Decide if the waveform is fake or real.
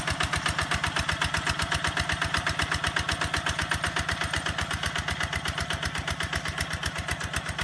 real